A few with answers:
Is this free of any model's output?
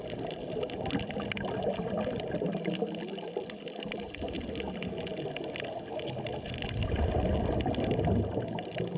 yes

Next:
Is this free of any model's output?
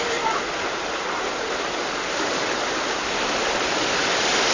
yes